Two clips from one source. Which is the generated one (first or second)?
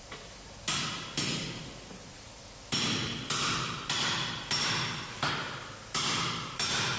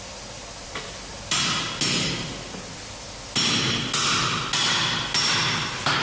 first